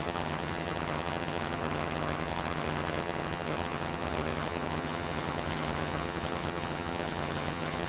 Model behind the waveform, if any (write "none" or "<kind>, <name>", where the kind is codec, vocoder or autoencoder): vocoder, HiFi-GAN